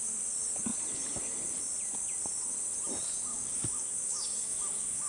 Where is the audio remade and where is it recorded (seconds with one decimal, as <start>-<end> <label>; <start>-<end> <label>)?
0.0-3.3 recorded; 3.3-5.1 remade